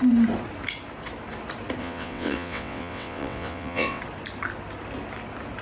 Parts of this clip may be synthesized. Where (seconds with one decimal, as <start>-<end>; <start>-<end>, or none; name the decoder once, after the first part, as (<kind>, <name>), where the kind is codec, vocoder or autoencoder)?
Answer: 1.8-4.0 (vocoder, WaveNeXt)